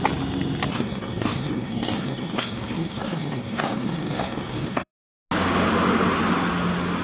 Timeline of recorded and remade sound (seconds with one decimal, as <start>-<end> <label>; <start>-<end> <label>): 0.0-0.7 recorded; 0.7-4.9 remade; 4.9-7.0 recorded